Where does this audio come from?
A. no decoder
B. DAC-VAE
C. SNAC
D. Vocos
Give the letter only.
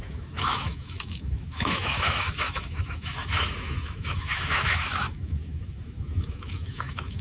B